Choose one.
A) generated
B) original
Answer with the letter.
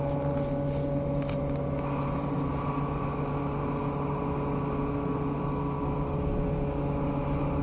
B